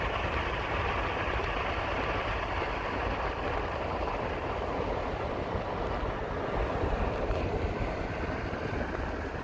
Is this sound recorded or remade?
recorded